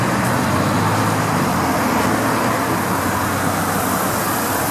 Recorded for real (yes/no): yes